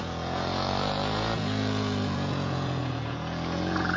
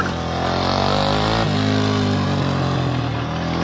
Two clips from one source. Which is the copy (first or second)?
first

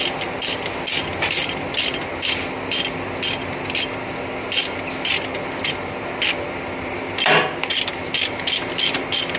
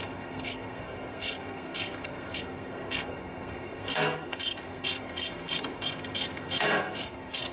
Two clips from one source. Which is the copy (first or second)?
second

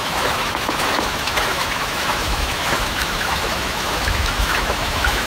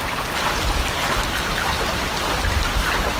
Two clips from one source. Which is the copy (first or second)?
first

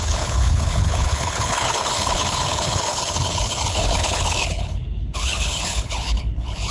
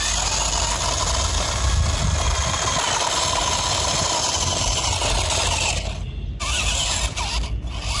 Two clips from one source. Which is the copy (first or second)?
first